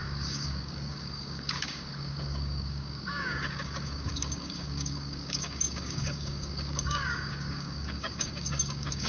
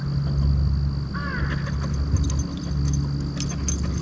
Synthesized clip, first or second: first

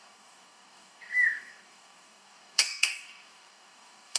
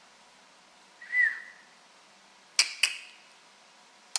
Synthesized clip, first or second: first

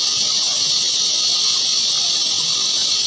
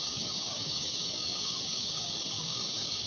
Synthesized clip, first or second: second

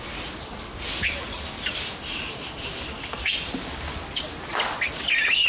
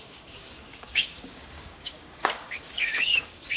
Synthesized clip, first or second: second